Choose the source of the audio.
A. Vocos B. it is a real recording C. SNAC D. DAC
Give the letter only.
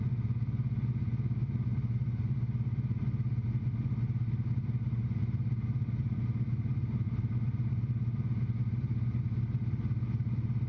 B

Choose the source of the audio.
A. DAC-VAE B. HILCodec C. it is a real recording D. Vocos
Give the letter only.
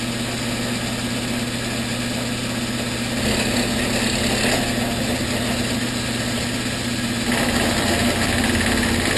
C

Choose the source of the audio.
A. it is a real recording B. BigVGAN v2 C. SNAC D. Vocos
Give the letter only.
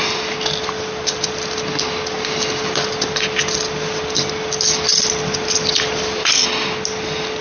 A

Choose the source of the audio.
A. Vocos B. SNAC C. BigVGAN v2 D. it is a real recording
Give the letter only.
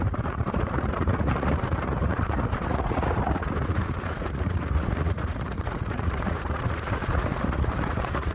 A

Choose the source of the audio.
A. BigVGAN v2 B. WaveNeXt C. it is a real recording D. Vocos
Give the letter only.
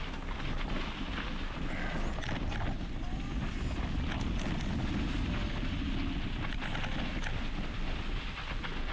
C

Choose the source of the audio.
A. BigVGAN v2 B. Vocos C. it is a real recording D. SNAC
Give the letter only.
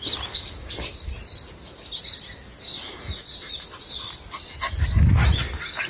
C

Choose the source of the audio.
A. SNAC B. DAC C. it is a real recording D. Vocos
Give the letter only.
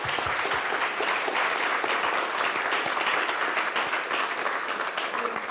C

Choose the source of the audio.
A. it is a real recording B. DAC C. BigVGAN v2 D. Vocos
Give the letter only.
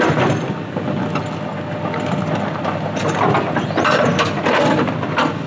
A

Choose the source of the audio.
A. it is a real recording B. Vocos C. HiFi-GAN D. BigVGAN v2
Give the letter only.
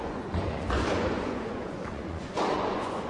B